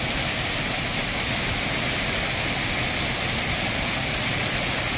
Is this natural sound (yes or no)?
yes